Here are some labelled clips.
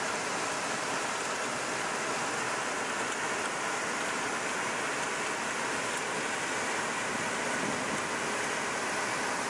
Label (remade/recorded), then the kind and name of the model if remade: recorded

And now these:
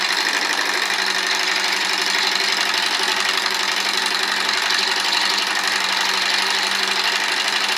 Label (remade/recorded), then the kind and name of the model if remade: recorded